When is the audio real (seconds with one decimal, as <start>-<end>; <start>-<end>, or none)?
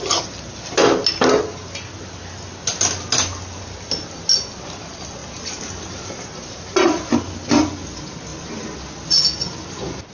0.0-10.1